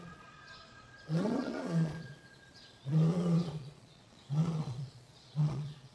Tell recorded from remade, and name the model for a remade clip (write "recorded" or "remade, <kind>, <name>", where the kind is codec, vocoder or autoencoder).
remade, vocoder, Vocos